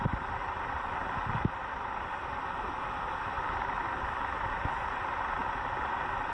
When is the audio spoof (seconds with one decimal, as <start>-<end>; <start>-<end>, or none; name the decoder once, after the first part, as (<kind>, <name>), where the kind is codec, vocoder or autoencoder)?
none